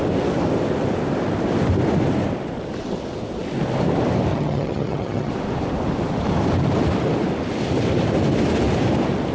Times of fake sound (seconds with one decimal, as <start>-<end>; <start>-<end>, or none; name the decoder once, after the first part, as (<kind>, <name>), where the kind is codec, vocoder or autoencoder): 4.3-5.3 (vocoder, HiFi-GAN)